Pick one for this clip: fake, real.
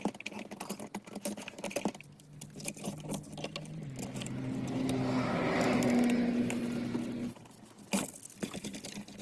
real